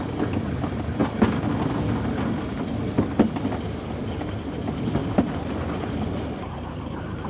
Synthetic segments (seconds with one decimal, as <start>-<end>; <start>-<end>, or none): none